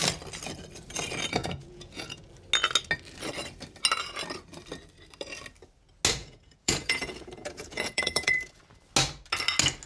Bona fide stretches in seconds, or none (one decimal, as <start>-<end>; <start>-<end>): 0.0-1.4; 2.2-6.2; 8.6-9.9